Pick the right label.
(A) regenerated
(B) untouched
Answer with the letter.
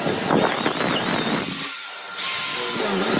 B